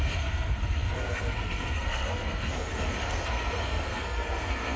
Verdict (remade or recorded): remade